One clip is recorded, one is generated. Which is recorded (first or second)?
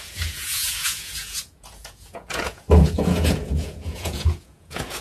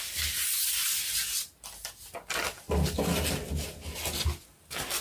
second